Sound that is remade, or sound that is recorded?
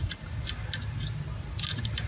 recorded